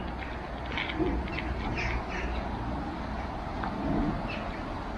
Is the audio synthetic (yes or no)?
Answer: no